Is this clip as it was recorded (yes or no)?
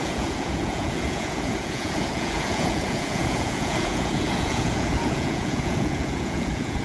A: no